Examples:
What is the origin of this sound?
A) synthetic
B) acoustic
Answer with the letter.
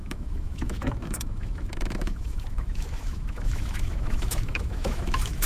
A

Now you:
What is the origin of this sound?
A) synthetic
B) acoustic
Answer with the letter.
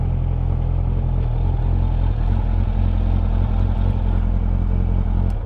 B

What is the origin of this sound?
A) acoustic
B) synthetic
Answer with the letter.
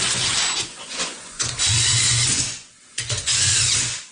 B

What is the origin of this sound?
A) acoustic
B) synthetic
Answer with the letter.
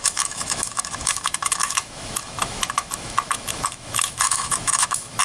B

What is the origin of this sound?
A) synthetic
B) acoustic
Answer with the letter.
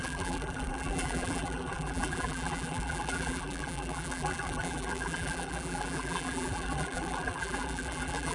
A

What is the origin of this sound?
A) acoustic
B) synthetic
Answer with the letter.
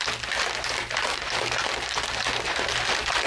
A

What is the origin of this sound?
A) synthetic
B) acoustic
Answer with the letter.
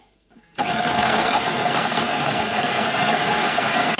A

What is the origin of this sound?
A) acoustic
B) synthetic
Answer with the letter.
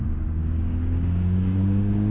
B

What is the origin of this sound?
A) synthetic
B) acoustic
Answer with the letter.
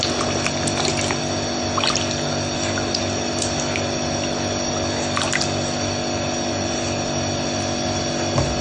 B